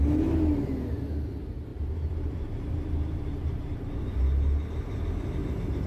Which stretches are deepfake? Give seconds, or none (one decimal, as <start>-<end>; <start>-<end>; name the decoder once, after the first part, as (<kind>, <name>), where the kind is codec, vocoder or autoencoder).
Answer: 1.7-4.0 (vocoder, BigVGAN v2); 5.4-5.9